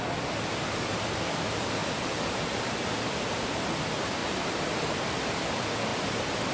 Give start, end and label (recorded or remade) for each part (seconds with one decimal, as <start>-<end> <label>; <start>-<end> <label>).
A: 0.0-4.2 recorded; 4.2-4.9 remade; 4.9-6.5 recorded